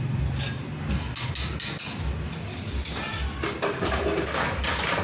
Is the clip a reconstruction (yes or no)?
no